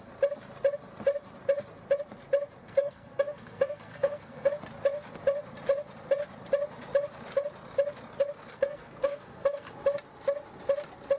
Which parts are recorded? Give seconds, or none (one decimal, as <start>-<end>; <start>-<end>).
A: 0.0-2.6; 4.5-8.5; 9.7-11.2